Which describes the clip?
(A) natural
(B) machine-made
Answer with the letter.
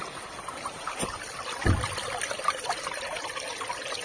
A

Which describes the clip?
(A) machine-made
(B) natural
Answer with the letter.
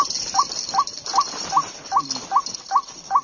B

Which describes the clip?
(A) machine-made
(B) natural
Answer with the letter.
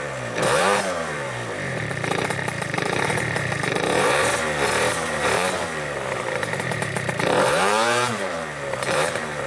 A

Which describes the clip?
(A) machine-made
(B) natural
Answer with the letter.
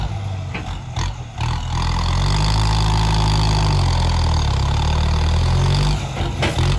B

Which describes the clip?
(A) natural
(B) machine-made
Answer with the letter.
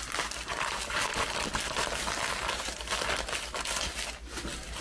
A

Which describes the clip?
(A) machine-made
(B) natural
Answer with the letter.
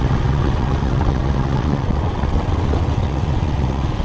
A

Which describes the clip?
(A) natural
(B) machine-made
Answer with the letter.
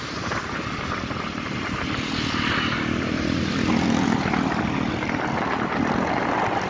A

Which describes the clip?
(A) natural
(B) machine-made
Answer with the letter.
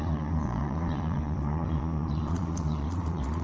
B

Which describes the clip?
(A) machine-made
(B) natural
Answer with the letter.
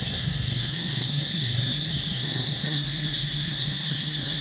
A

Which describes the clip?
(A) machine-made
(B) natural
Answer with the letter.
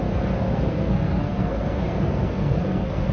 A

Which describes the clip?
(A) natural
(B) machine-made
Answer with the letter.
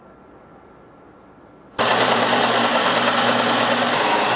A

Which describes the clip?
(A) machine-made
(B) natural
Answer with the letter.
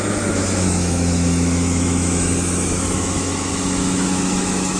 A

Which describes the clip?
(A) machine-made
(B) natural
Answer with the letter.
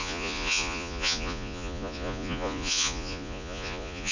A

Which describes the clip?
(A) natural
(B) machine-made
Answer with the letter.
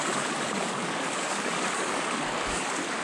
B